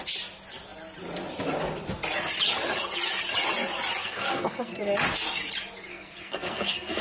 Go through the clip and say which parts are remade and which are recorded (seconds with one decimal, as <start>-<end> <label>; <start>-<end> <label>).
0.0-4.0 recorded; 4.0-4.8 remade; 4.8-5.9 recorded; 5.9-7.0 remade